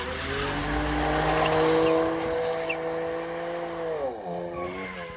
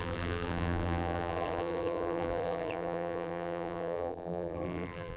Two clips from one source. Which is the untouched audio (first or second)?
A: first